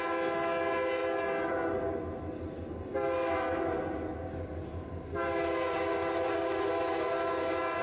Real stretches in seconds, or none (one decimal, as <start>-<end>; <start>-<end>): 0.0-7.8